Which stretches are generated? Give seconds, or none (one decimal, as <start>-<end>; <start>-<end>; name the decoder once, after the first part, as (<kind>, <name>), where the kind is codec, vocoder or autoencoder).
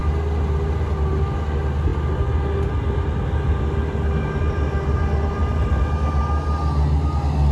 none